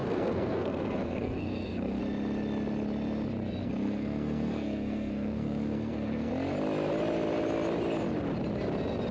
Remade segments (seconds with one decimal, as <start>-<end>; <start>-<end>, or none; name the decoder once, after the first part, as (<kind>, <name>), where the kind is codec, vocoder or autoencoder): 0.0-2.0 (codec, SNAC); 3.6-6.3